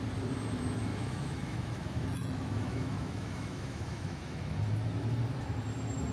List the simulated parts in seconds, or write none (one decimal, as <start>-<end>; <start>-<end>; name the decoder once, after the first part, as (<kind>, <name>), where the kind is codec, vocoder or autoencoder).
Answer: 0.9-4.6 (autoencoder, DAC-VAE)